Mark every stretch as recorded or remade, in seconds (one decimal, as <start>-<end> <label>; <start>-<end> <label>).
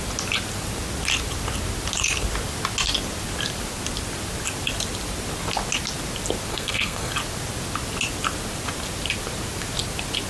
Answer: 0.0-6.5 recorded; 6.5-7.1 remade; 7.1-10.3 recorded